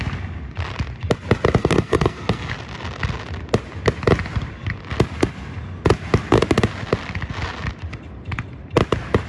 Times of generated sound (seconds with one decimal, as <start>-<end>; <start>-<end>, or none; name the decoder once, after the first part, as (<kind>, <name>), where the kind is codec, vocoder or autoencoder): 1.6-2.5 (codec, SNAC)